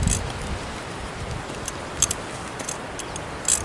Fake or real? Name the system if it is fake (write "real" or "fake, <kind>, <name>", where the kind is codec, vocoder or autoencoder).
real